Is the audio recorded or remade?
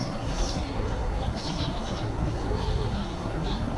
remade